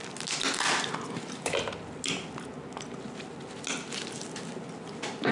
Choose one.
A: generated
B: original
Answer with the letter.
B